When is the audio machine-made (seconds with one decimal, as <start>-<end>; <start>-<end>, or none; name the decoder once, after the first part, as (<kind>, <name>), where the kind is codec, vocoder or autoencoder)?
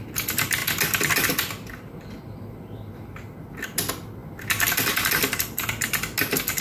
4.2-5.6 (vocoder, BigVGAN v2)